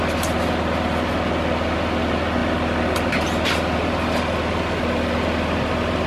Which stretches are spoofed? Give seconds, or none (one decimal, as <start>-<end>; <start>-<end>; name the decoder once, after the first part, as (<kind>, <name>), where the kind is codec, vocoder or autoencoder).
2.4-6.1 (vocoder, BigVGAN v2)